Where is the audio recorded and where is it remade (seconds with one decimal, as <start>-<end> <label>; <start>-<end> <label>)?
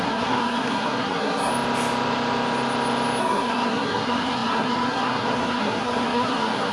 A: 0.0-1.5 remade; 1.5-3.2 recorded; 3.2-6.7 remade